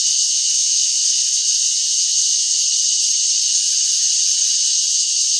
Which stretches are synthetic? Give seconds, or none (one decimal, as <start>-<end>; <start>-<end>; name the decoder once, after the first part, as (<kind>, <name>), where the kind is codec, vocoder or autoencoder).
0.0-2.5 (vocoder, WaveNeXt); 4.9-5.4